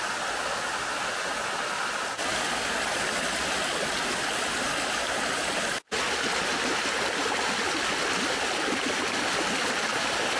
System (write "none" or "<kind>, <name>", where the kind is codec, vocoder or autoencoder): none